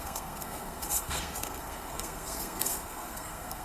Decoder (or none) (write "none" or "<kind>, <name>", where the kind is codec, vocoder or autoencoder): codec, SNAC